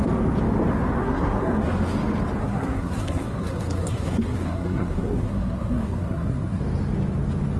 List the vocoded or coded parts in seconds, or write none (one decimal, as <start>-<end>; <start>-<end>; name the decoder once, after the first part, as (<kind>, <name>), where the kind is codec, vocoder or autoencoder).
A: 1.0-1.6 (codec, SNAC); 2.4-6.6